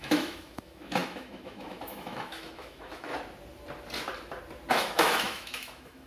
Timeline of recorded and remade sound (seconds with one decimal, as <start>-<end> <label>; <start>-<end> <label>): 0.0-3.1 remade; 3.1-4.7 recorded; 4.7-6.1 remade